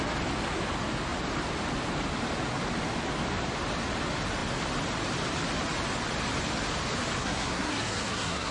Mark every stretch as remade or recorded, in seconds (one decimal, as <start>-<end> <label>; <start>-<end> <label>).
0.0-7.2 recorded; 7.2-8.5 remade